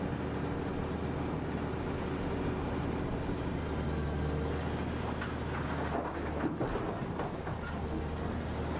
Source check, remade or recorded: recorded